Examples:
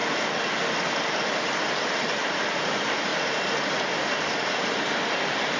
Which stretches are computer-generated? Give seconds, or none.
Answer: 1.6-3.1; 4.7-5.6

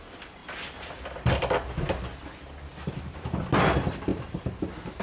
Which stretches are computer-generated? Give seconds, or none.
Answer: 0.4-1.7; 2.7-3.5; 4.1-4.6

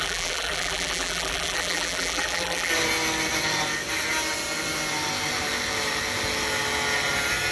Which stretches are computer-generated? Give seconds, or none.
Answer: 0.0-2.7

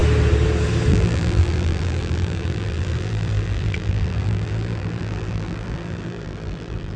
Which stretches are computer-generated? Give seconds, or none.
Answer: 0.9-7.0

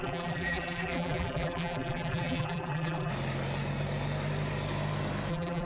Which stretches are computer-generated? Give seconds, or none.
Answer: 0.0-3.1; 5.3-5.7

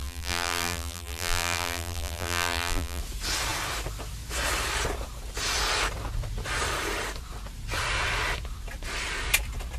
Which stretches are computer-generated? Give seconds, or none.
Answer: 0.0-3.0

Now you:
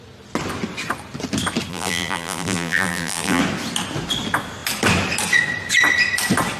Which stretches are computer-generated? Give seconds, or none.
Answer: 1.7-3.4